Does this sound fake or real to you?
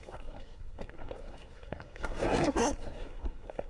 fake